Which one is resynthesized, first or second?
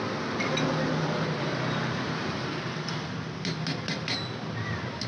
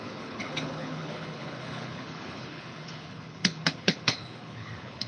second